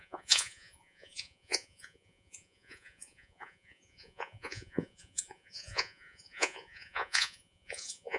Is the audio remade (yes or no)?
yes